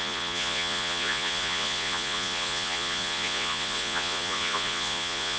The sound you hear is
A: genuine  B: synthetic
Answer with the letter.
B